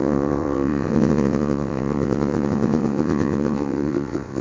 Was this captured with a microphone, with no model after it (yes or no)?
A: no